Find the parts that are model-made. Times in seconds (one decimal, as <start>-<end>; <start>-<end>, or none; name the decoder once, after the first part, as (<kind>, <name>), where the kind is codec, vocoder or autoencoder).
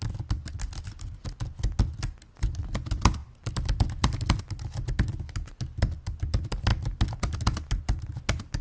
3.2-4.4 (vocoder, BigVGAN v2)